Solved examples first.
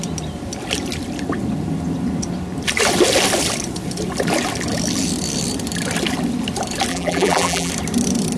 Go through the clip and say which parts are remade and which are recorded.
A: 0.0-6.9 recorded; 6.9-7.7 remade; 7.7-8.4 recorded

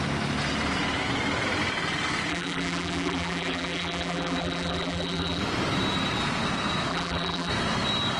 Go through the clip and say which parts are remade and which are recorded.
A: 0.0-2.3 recorded; 2.3-5.4 remade; 5.4-6.9 recorded; 6.9-7.5 remade; 7.5-8.2 recorded

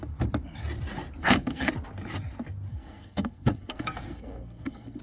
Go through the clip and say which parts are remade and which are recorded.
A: 0.0-1.2 recorded; 1.2-1.7 remade; 1.7-2.7 recorded; 2.7-5.0 remade

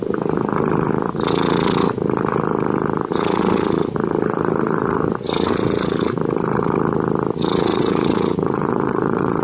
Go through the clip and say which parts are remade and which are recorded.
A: 0.0-7.7 recorded; 7.7-9.4 remade

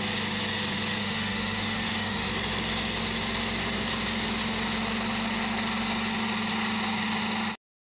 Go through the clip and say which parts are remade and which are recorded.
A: 0.0-1.0 recorded; 1.0-2.3 remade; 2.3-8.0 recorded

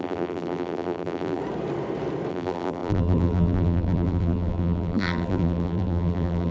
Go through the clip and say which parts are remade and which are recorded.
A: 0.0-1.4 remade; 1.4-2.3 recorded; 2.3-6.5 remade

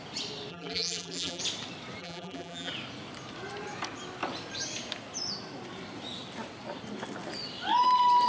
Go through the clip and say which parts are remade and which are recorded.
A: 0.0-0.5 recorded; 0.5-1.4 remade; 1.4-2.0 recorded; 2.0-2.7 remade; 2.7-8.3 recorded

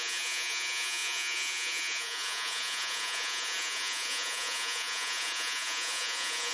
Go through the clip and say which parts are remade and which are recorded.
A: 0.0-6.5 remade